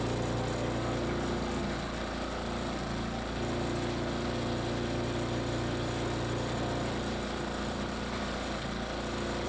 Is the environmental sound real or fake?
real